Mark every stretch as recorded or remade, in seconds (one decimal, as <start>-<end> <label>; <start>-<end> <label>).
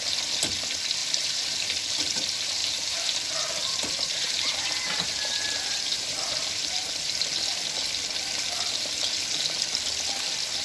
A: 0.0-1.0 recorded; 1.0-1.7 remade; 1.7-2.6 recorded; 2.6-6.3 remade; 6.3-10.6 recorded